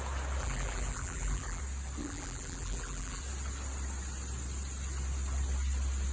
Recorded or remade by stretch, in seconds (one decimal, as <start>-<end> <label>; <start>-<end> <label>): 0.0-0.4 recorded; 0.4-1.6 remade; 1.6-2.0 recorded; 2.0-3.2 remade; 3.2-6.1 recorded